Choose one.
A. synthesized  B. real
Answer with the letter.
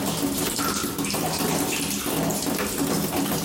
B